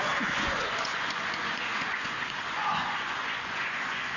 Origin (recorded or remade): remade